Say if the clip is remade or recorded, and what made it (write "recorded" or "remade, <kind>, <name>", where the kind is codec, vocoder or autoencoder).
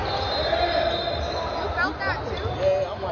recorded